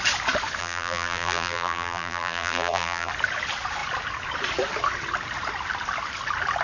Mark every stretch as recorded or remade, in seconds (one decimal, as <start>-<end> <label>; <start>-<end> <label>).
0.0-0.6 recorded; 0.6-3.1 remade; 3.1-6.6 recorded